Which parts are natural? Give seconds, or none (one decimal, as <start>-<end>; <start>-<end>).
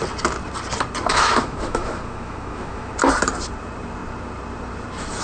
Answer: 0.0-1.1; 2.9-5.2